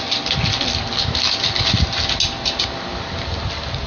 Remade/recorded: recorded